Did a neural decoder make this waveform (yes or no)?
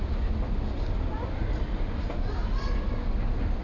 no